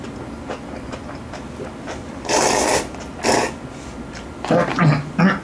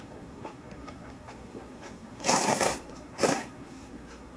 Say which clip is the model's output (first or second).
second